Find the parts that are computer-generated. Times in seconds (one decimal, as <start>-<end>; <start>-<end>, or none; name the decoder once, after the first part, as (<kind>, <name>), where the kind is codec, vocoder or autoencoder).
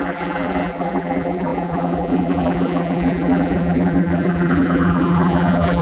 0.0-5.8 (vocoder, BigVGAN v2)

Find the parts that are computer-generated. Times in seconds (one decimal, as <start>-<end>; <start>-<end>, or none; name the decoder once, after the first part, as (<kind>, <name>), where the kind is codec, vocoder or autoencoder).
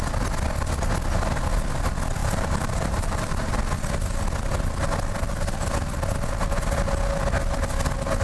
2.2-3.5 (vocoder, BigVGAN v2)